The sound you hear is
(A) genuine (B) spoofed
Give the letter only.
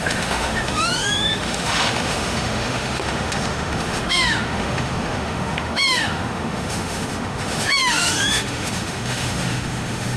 B